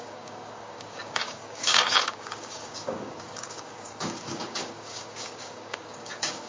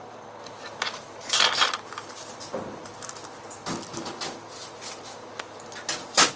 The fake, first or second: first